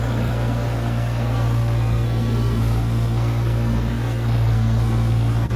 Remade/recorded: remade